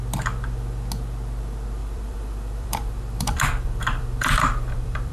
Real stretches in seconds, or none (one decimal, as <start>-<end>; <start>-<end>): 0.0-1.8